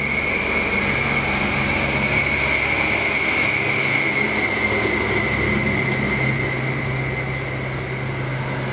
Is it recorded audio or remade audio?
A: recorded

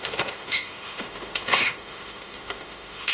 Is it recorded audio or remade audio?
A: remade